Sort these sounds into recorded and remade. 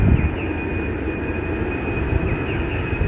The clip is recorded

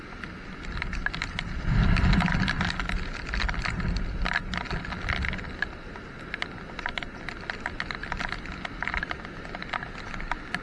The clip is recorded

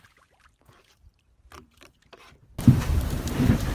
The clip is remade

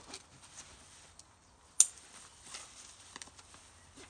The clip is recorded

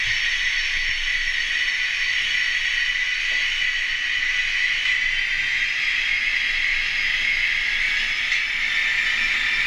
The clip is recorded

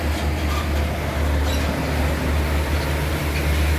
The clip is recorded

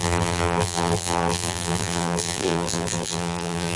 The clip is remade